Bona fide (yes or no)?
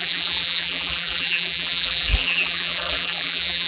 no